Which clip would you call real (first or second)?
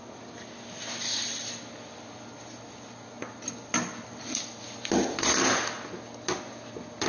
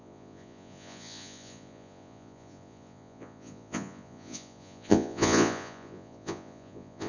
first